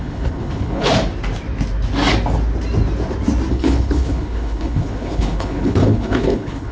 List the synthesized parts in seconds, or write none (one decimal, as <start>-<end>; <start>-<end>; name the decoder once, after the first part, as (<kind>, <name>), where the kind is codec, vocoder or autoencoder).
0.0-0.9 (codec, HILCodec); 3.5-6.7